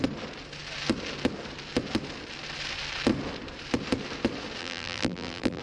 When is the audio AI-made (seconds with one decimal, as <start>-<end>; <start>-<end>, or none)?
4.6-5.6